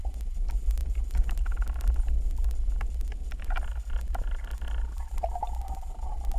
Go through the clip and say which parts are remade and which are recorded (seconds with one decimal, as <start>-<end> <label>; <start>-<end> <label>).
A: 0.0-6.4 recorded